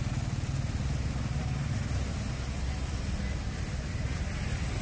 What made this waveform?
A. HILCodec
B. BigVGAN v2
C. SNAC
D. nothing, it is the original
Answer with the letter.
D